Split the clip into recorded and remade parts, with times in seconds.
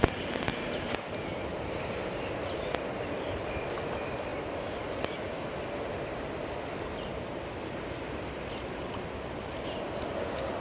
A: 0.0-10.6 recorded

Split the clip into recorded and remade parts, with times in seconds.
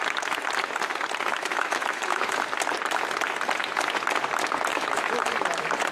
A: 0.0-1.3 recorded; 1.3-2.2 remade; 2.2-4.7 recorded; 4.7-5.3 remade; 5.3-5.9 recorded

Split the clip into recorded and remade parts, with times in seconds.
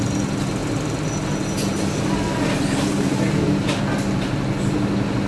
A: 0.0-5.3 recorded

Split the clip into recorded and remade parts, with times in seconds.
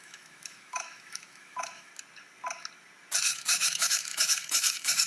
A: 0.0-1.9 remade; 1.9-3.2 recorded; 3.2-5.1 remade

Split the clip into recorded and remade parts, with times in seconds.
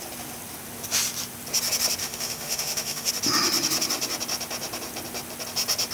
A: 0.0-2.0 recorded; 2.0-3.1 remade; 3.1-5.9 recorded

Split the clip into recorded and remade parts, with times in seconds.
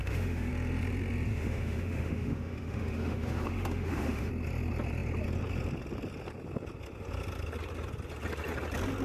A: 0.0-0.5 remade; 0.5-1.3 recorded; 1.3-4.3 remade; 4.3-9.0 recorded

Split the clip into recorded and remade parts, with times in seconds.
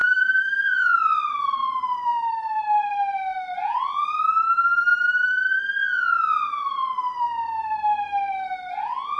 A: 0.0-0.9 remade; 0.9-9.2 recorded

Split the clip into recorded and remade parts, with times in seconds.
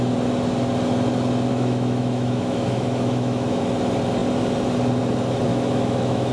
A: 0.0-1.5 recorded; 1.5-3.6 remade; 3.6-5.5 recorded; 5.5-6.3 remade